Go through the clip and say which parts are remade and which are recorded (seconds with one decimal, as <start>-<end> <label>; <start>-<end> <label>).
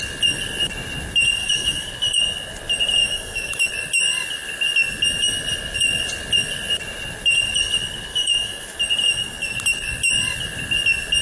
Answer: 0.0-1.4 recorded; 1.4-1.9 remade; 1.9-3.0 recorded; 3.0-3.7 remade; 3.7-8.1 recorded; 8.1-8.8 remade; 8.8-11.2 recorded